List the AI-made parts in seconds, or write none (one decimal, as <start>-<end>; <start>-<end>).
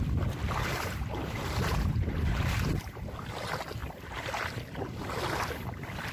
0.6-3.3